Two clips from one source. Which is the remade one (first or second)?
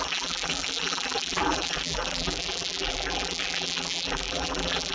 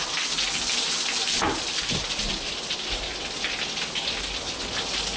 first